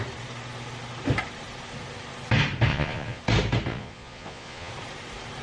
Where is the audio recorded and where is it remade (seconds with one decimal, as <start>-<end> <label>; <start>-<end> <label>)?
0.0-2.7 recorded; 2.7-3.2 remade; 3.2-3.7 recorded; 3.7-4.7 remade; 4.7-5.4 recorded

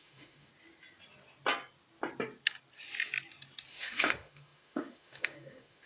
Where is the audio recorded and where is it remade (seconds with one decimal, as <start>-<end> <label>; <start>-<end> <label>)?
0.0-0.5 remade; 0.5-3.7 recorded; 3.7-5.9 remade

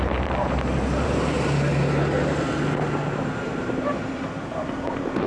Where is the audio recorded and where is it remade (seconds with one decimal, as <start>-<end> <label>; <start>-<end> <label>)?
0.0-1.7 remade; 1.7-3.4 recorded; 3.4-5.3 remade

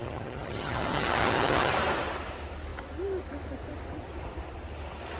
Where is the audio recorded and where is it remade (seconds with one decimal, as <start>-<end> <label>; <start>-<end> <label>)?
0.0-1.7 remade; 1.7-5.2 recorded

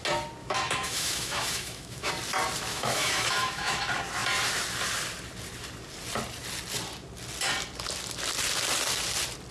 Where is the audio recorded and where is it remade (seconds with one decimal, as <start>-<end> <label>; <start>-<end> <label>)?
0.0-0.4 recorded; 0.4-2.1 remade; 2.1-2.7 recorded; 2.7-3.8 remade; 3.8-9.5 recorded

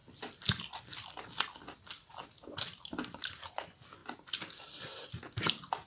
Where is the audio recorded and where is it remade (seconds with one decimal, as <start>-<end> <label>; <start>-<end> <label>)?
0.0-5.9 recorded

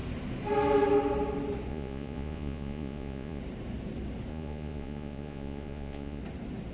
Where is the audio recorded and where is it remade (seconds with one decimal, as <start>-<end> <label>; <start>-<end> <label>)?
0.0-1.7 recorded; 1.7-3.4 remade; 3.4-4.3 recorded; 4.3-6.2 remade; 6.2-6.7 recorded